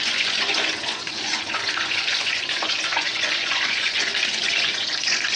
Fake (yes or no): yes